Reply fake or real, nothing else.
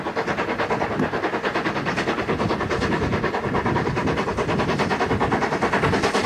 real